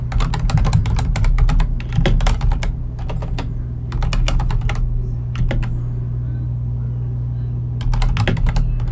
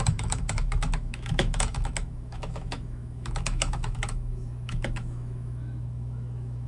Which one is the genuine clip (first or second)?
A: first